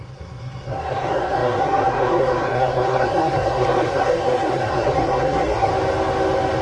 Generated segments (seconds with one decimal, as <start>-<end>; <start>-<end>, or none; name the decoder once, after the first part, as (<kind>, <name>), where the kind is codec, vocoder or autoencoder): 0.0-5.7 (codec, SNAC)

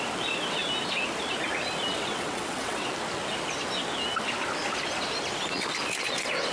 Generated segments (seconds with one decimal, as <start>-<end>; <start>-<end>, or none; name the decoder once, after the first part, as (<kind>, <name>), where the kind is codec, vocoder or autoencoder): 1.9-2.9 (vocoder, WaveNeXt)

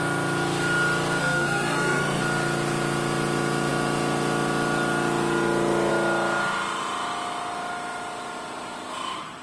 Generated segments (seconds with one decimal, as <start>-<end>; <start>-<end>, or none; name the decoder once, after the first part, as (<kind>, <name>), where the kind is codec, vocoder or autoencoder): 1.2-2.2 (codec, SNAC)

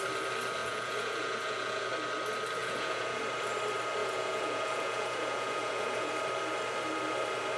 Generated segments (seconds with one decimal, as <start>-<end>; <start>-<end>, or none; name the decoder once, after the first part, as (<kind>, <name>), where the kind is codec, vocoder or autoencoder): 0.6-1.9 (vocoder, Vocos); 2.6-3.2; 4.0-6.1

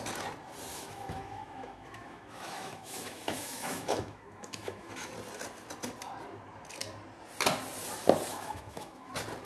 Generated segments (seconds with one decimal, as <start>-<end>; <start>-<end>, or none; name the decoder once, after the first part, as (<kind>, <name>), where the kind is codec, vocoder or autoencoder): 0.7-5.1 (autoencoder, DAC-VAE); 8.3-9.1

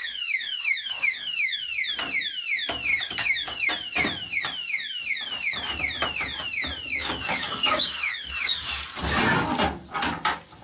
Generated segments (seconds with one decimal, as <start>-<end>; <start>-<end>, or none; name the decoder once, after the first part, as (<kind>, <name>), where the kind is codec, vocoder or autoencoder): 0.0-1.6 (codec, DAC); 2.9-3.7; 7.0-8.7

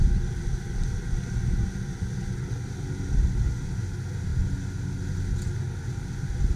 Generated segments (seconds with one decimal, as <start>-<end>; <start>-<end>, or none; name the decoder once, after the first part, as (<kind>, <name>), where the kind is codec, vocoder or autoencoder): none

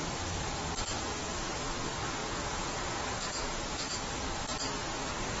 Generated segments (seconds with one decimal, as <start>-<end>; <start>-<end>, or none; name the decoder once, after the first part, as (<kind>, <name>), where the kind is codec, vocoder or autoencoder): 2.2-4.0 (vocoder, Vocos)